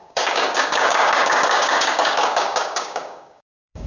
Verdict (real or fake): fake